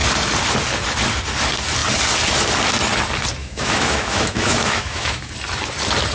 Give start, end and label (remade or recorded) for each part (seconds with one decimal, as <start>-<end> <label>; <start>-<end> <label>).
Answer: 0.0-3.4 recorded; 3.4-5.3 remade; 5.3-6.1 recorded